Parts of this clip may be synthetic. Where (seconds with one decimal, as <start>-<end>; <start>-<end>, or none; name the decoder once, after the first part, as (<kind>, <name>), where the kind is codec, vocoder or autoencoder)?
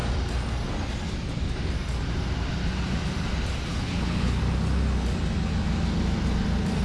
3.7-4.4 (codec, HILCodec)